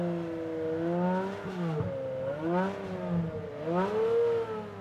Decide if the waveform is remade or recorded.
recorded